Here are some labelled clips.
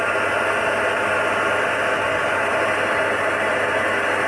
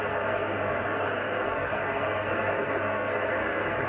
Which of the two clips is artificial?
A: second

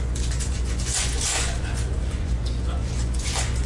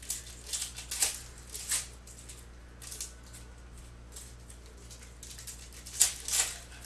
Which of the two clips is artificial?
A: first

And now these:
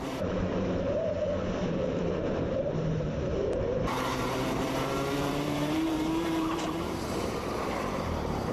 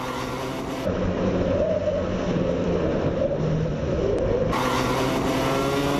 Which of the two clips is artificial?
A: first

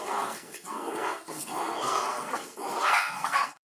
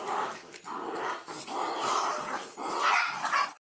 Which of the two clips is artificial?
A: first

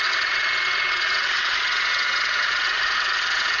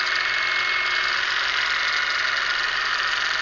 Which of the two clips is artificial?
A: first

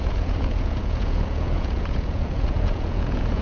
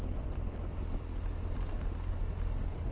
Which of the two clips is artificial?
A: first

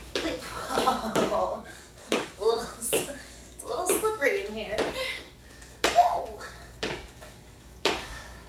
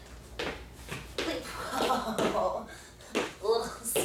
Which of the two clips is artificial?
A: first